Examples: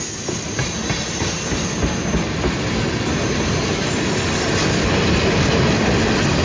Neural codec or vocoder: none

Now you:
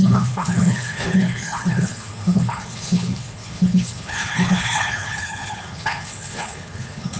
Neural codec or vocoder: codec, HILCodec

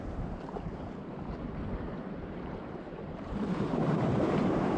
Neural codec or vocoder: vocoder, BigVGAN v2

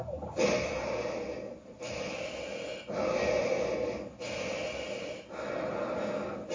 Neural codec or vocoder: none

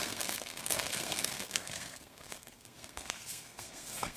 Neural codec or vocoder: codec, SNAC